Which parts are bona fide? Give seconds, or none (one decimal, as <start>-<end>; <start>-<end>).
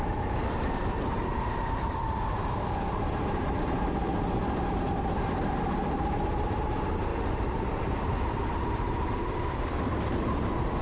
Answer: 0.0-1.3; 2.2-7.1; 9.9-10.8